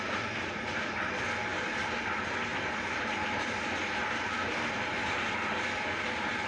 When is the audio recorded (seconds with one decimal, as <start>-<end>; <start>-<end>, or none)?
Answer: 0.0-6.5